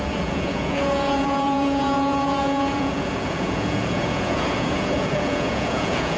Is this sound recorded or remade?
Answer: remade